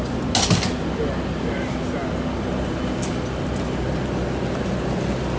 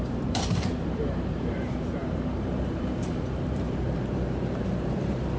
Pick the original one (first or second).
first